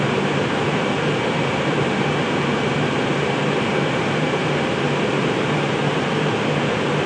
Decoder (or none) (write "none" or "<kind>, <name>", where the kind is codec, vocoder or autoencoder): vocoder, BigVGAN v2